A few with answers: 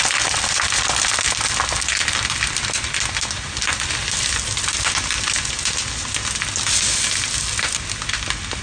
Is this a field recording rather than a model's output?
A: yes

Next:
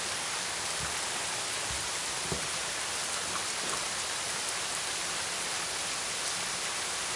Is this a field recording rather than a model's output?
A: yes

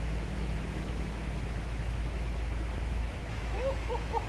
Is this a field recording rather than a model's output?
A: no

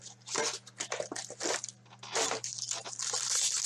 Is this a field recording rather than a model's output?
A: yes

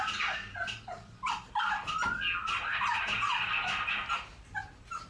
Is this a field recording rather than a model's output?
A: yes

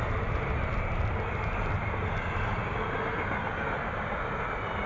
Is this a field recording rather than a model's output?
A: yes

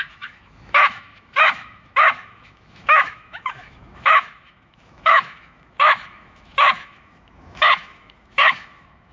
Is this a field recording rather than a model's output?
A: no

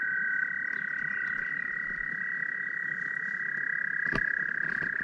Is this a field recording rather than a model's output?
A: yes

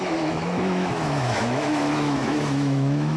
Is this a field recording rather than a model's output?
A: no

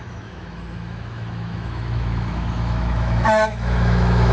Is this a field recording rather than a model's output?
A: no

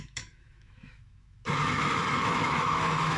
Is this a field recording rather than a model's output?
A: no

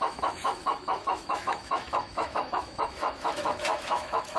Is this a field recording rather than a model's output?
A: no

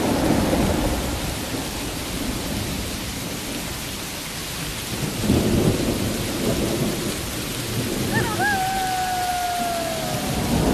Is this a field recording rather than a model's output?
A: yes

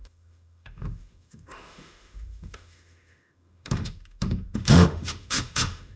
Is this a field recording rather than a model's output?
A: no